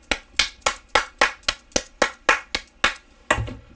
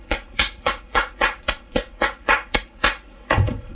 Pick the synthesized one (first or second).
second